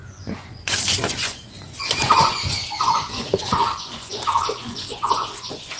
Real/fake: fake